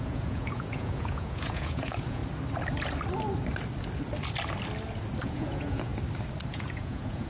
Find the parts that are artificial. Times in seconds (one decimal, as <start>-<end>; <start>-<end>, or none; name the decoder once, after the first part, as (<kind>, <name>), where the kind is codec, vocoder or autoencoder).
0.0-2.2 (vocoder, Vocos); 5.2-5.9; 6.5-7.3